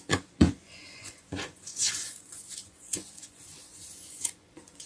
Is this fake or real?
fake